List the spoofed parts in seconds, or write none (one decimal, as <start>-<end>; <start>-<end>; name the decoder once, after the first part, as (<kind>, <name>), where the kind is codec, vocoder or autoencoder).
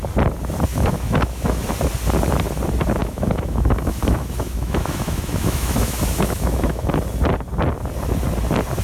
0.7-1.6 (autoencoder, DAC-VAE); 3.0-6.9